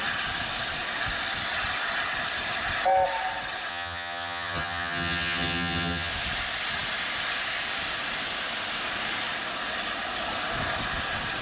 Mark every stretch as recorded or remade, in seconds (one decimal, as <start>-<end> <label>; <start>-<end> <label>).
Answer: 0.0-3.7 recorded; 3.7-6.1 remade; 6.1-11.4 recorded